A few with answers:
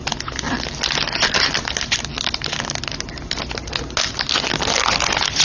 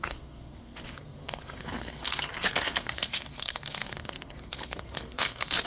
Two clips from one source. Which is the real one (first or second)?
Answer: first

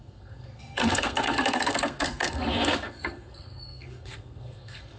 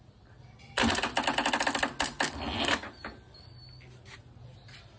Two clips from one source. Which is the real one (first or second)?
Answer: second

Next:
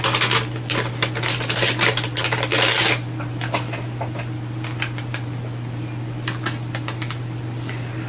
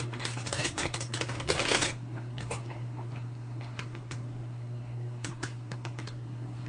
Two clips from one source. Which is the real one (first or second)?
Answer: first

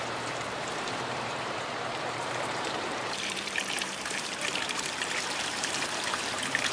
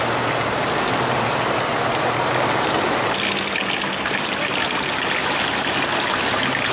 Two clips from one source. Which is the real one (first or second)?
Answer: second